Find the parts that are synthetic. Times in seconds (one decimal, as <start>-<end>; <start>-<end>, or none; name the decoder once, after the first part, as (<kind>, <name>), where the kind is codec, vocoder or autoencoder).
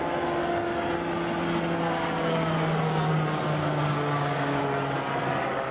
3.6-4.6 (codec, DAC)